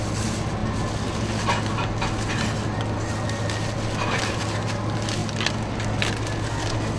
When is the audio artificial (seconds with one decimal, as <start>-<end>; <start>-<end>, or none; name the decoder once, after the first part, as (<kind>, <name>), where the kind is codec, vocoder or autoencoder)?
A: none